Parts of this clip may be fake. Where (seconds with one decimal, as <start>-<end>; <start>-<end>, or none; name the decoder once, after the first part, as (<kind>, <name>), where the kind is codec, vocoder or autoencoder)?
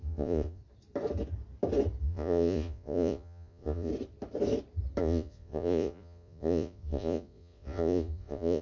0.0-0.6 (vocoder, Vocos); 2.0-3.9; 5.0-8.6